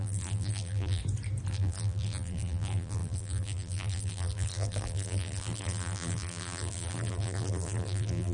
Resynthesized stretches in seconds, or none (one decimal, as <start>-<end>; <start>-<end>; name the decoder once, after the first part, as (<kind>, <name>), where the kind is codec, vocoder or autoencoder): 0.0-1.0 (vocoder, BigVGAN v2); 1.5-8.3